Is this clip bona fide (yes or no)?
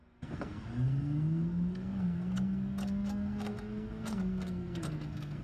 no